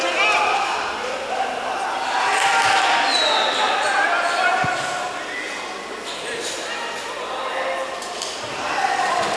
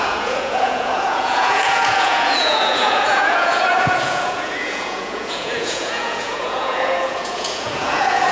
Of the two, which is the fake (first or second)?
second